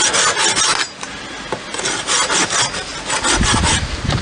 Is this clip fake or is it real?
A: real